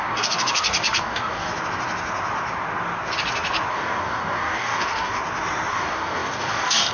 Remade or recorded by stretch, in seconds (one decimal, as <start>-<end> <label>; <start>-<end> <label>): 0.0-1.5 remade; 1.5-3.7 recorded; 3.7-5.2 remade; 5.2-5.7 recorded; 5.7-6.9 remade